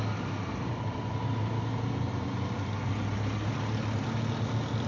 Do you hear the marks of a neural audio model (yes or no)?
no